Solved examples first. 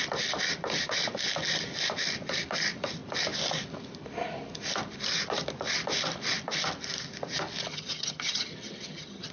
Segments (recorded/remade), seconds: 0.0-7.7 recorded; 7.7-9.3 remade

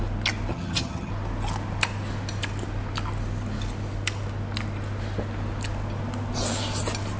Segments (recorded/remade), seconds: 0.0-0.5 recorded; 0.5-1.1 remade; 1.1-7.2 recorded

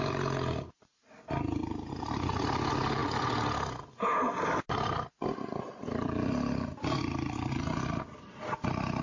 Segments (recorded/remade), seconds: 0.0-9.0 recorded